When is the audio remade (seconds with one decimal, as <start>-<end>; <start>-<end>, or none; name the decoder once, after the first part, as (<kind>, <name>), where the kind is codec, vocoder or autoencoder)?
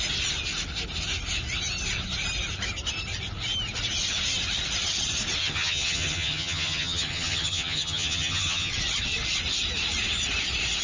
5.4-8.7 (vocoder, HiFi-GAN)